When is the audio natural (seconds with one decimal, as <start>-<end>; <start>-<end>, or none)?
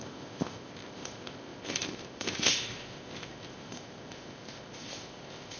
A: none